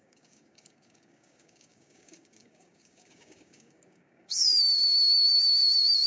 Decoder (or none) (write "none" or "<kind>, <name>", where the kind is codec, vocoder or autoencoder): codec, DAC